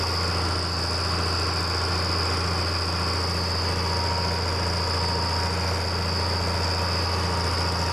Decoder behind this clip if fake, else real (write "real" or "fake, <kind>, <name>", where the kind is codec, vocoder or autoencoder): real